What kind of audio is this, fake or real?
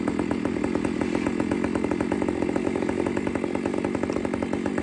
real